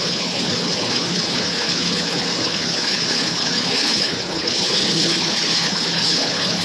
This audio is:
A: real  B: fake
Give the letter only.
B